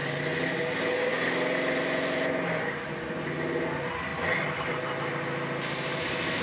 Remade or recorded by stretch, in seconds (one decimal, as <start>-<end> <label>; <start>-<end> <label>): 0.0-6.4 recorded